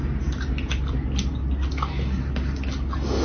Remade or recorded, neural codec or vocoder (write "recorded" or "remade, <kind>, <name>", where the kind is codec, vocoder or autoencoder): recorded